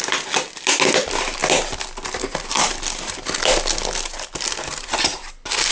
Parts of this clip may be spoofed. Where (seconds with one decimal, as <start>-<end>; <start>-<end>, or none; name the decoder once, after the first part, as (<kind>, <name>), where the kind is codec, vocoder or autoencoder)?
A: none